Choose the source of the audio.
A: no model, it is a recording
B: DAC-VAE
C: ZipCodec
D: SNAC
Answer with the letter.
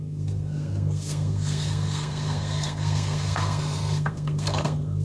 D